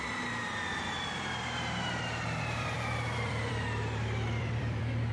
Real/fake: fake